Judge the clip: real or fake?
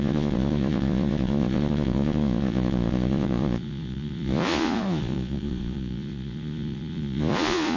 fake